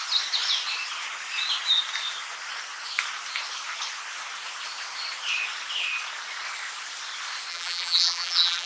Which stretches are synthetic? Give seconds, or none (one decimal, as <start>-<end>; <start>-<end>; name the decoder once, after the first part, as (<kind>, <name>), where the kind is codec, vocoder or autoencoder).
7.5-8.7 (vocoder, BigVGAN v2)